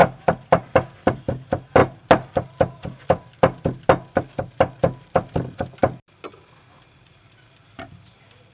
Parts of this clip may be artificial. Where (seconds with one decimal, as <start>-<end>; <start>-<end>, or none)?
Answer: none